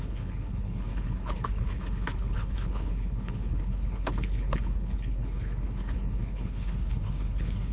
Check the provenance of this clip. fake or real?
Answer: fake